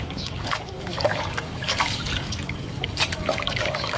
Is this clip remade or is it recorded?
remade